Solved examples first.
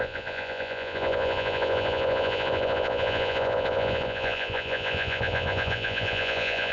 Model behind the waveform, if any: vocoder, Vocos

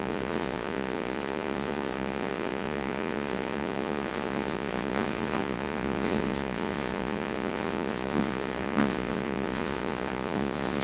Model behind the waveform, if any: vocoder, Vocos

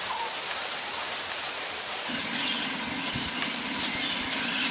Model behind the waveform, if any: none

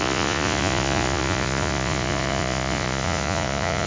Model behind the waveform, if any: vocoder, Vocos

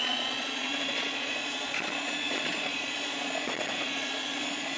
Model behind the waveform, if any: vocoder, Vocos